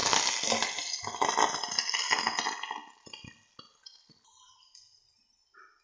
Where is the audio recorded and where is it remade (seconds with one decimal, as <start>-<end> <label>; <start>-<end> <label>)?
0.0-5.8 recorded